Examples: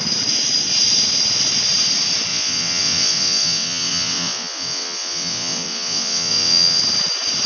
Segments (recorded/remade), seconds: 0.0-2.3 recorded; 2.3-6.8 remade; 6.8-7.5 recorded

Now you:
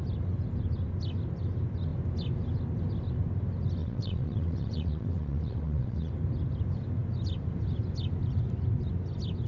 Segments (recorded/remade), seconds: 0.0-3.8 recorded; 3.8-6.1 remade; 6.1-9.5 recorded

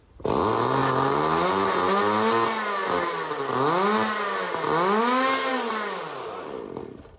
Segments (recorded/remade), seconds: 0.0-7.2 recorded

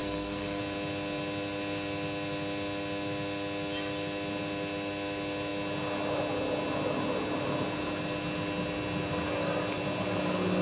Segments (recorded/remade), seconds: 0.0-0.6 remade; 0.6-10.6 recorded